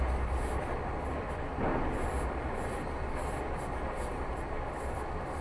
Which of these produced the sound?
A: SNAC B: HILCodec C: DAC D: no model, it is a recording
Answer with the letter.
D